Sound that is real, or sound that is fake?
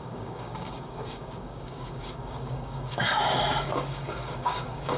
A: fake